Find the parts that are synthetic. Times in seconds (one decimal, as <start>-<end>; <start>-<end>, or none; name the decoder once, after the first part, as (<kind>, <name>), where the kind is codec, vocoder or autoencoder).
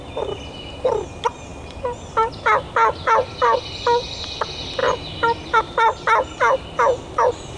none